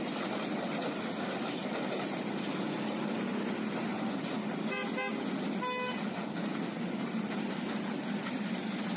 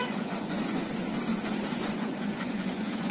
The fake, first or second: second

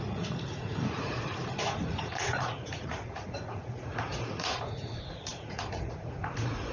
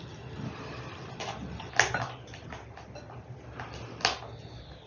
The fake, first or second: first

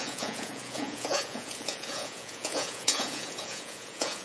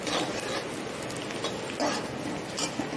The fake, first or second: first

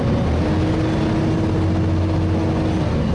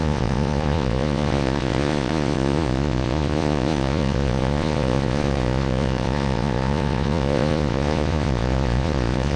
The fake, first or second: second